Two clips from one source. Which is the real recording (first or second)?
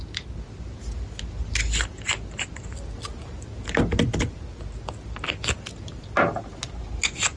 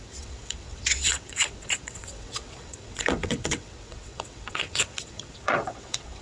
first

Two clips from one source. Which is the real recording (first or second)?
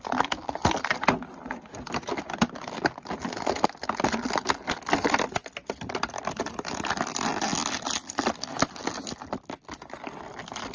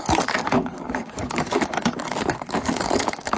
first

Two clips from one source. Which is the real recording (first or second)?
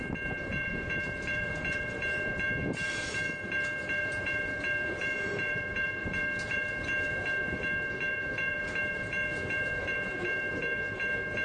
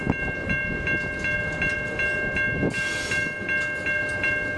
second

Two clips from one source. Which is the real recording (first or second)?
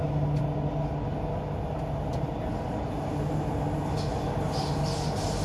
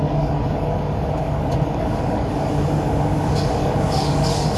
first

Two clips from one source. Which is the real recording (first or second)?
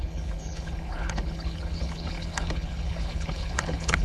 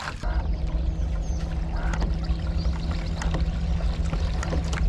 second